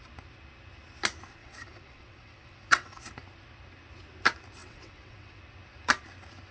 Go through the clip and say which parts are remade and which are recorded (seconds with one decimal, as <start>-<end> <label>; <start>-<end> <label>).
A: 0.0-1.4 recorded; 1.4-3.0 remade; 3.0-4.6 recorded; 4.6-5.4 remade; 5.4-6.5 recorded

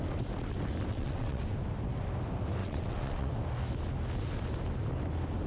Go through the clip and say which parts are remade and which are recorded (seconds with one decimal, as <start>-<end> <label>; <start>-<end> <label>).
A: 0.0-0.9 recorded; 0.9-1.4 remade; 1.4-2.6 recorded; 2.6-3.3 remade; 3.3-5.5 recorded